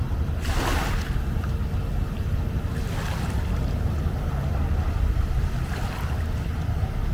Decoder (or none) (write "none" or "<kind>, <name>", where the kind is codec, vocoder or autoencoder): none